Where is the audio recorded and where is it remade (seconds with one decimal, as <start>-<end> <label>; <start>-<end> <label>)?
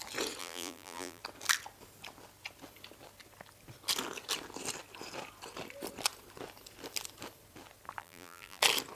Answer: 0.0-0.4 recorded; 0.4-1.2 remade; 1.2-8.0 recorded; 8.0-8.6 remade; 8.6-9.0 recorded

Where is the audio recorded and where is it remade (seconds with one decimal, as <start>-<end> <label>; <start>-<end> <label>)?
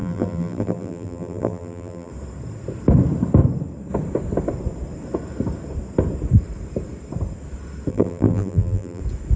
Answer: 0.0-2.1 remade; 2.1-7.9 recorded; 7.9-9.0 remade; 9.0-9.4 recorded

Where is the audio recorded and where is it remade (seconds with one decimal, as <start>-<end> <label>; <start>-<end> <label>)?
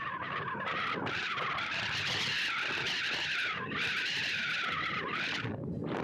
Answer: 0.0-6.0 recorded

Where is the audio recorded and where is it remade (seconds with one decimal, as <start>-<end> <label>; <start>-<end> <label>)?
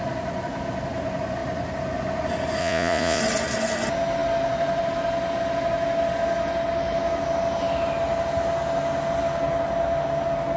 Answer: 0.0-2.6 recorded; 2.6-3.2 remade; 3.2-10.6 recorded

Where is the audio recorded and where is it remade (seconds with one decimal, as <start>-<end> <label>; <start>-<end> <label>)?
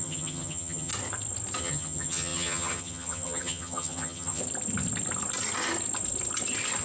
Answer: 0.0-0.9 remade; 0.9-1.6 recorded; 1.6-4.4 remade; 4.4-6.8 recorded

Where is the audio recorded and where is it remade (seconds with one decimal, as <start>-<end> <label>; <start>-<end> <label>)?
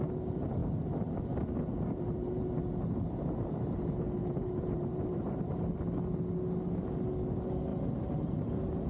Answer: 0.0-1.7 recorded; 1.7-3.8 remade; 3.8-4.2 recorded; 4.2-5.4 remade; 5.4-7.7 recorded; 7.7-8.5 remade; 8.5-8.9 recorded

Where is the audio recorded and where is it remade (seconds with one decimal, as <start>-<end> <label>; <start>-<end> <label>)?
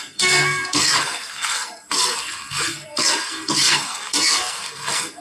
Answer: 0.0-5.2 remade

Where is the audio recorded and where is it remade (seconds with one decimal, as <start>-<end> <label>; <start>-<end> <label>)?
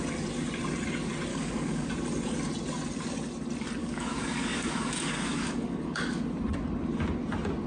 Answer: 0.0-1.3 recorded; 1.3-1.9 remade; 1.9-3.8 recorded; 3.8-6.2 remade; 6.2-7.7 recorded